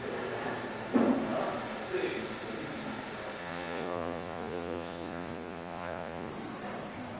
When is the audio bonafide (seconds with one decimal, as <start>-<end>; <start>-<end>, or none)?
0.0-3.4; 6.3-7.2